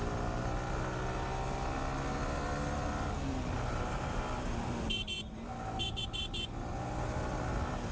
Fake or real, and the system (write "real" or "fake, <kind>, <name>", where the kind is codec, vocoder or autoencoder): real